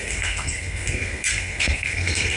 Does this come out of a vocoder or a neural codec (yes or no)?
yes